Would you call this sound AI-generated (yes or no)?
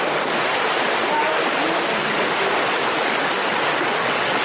no